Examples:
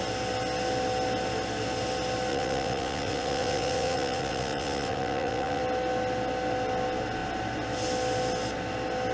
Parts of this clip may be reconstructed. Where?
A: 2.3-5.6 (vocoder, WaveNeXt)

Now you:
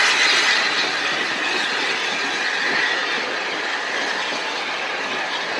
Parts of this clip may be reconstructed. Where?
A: none

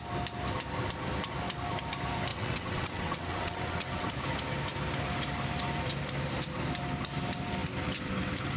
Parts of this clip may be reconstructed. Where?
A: 2.3-4.1 (vocoder, WaveNeXt)

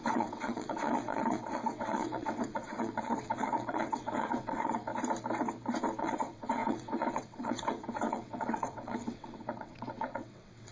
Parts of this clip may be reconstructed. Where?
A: 0.0-4.9 (vocoder, WaveNeXt); 6.0-10.7